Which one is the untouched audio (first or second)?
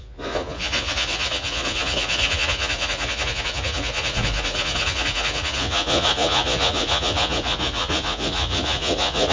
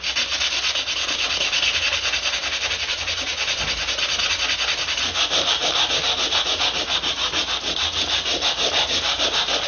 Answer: second